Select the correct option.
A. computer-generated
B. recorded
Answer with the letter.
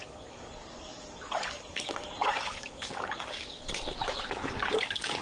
A